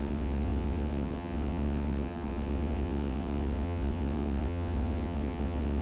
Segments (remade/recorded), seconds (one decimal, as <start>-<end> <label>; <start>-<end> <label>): 0.0-5.8 remade

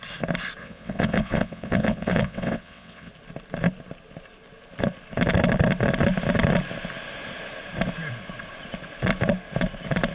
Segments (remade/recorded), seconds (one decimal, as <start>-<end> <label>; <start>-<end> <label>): 0.0-0.6 recorded; 0.6-3.1 remade; 3.1-10.1 recorded